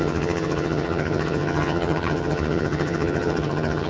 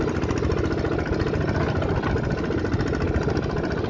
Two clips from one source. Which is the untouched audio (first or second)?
second